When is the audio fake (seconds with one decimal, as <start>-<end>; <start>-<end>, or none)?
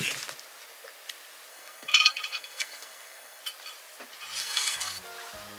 1.5-3.4; 4.4-5.0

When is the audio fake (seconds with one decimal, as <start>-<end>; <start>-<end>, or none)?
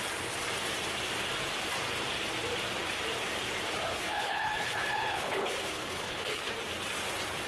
3.9-6.4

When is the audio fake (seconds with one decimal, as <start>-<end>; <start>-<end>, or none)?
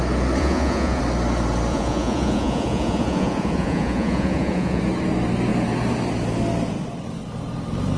0.4-1.0; 1.7-4.8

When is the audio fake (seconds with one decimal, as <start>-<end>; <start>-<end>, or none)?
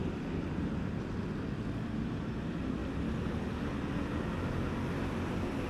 0.0-0.7